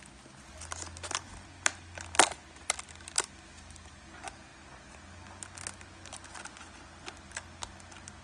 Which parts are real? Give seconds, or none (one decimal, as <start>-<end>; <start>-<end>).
0.0-8.2